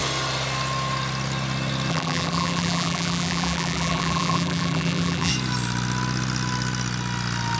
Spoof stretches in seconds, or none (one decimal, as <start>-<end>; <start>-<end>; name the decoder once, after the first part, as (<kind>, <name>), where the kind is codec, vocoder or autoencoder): 1.9-5.3 (vocoder, BigVGAN v2)